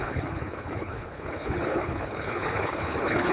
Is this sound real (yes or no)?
no